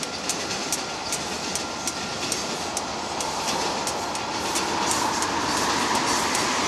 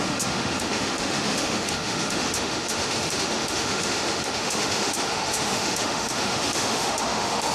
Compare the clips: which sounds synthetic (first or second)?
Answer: second